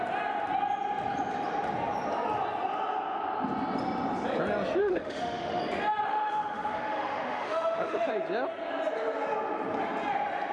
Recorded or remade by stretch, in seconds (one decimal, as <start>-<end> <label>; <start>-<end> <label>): 0.0-4.8 recorded; 4.8-5.6 remade; 5.6-6.1 recorded; 6.1-8.1 remade; 8.1-10.5 recorded